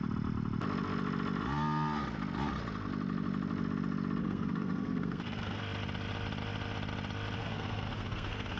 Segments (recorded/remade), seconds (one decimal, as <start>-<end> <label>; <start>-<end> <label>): 0.0-4.2 recorded; 4.2-5.6 remade; 5.6-7.4 recorded; 7.4-8.6 remade